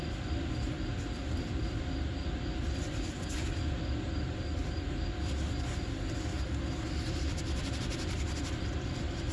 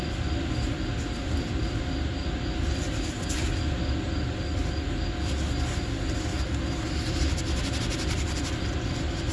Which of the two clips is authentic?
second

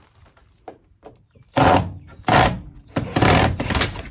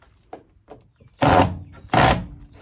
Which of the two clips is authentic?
second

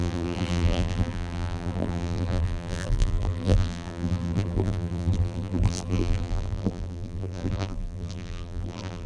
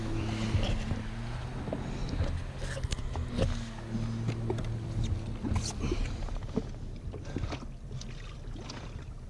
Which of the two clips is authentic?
second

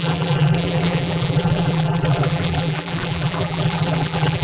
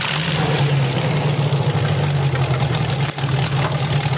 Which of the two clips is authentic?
second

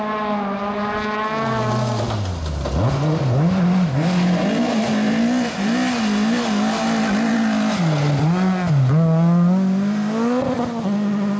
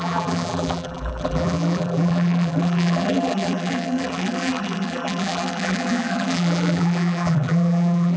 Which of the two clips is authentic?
first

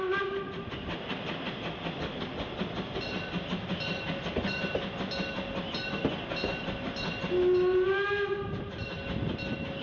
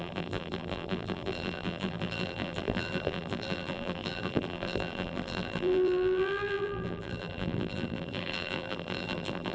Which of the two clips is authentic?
first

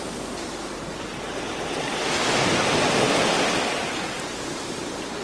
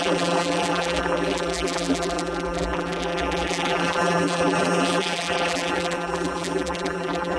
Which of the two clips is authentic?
first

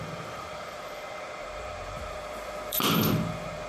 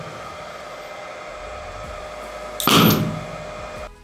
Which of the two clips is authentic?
second